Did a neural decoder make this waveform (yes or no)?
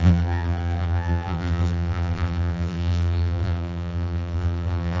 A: yes